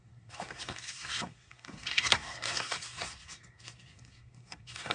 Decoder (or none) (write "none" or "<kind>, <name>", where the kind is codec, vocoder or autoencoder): codec, SNAC